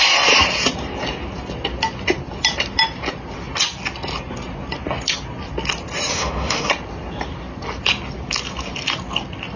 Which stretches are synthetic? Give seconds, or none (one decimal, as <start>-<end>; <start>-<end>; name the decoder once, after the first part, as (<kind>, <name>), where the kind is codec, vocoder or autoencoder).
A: 6.1-6.7 (autoencoder, DAC-VAE)